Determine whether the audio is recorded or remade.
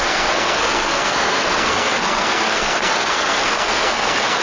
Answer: remade